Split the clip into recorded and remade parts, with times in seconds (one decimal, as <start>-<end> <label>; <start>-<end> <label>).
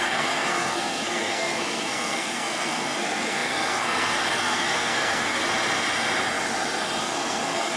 0.0-5.4 remade; 5.4-7.0 recorded; 7.0-7.8 remade